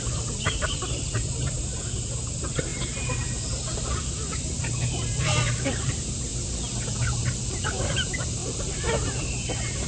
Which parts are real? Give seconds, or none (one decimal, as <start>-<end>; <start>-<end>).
6.3-7.2